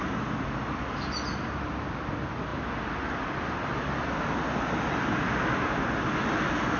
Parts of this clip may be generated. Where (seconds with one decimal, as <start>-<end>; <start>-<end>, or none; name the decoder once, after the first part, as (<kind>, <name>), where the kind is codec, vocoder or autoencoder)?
none